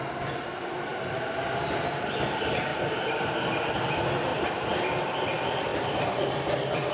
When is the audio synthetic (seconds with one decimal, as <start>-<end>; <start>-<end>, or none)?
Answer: 2.7-3.3; 4.3-5.2; 5.7-6.2